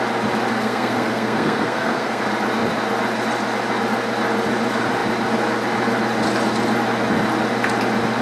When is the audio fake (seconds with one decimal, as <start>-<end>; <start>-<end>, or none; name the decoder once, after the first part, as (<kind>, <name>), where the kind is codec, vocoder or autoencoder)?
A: 0.5-2.2 (codec, SNAC)